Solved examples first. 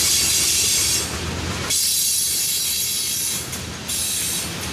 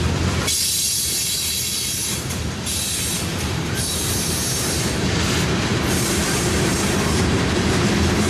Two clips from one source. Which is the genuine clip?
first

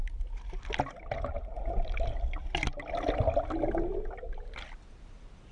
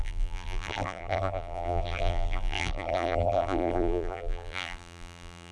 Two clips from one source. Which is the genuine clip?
first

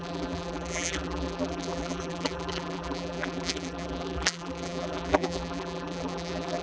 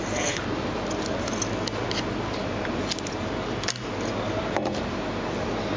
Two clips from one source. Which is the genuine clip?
second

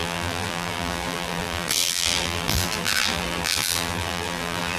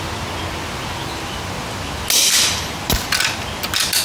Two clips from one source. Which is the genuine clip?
second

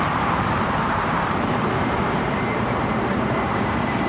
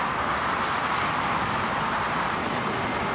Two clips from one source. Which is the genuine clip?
second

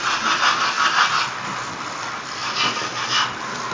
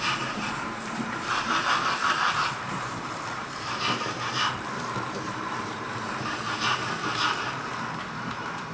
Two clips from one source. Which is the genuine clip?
first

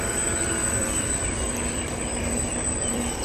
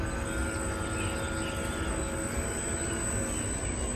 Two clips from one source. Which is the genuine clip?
second